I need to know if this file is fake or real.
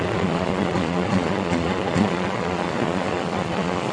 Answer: fake